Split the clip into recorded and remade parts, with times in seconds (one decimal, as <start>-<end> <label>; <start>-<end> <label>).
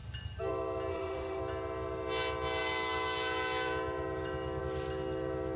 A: 0.0-0.9 recorded; 0.9-1.4 remade; 1.4-5.6 recorded